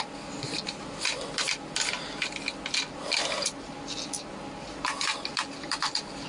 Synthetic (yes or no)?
no